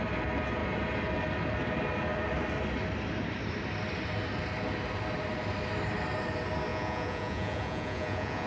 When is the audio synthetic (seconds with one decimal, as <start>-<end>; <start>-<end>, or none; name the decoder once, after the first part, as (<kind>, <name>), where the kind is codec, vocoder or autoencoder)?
6.7-8.5 (vocoder, Vocos)